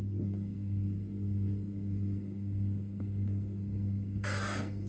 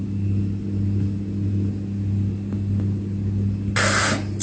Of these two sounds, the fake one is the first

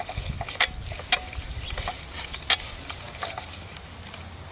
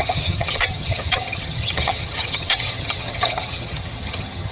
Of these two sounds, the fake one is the second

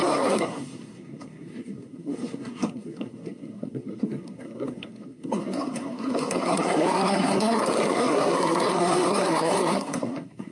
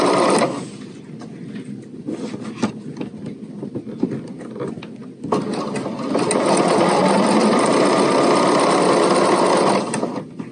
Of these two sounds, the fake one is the first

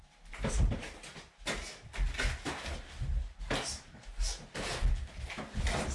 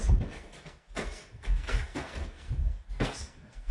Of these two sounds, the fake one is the second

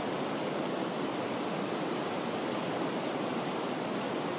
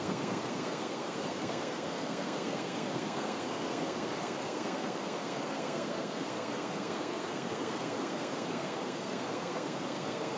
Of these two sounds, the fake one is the second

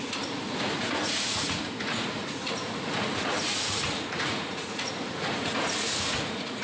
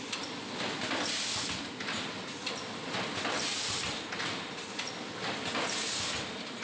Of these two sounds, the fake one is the first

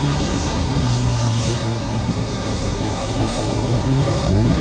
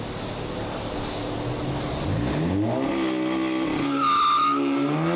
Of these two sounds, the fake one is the first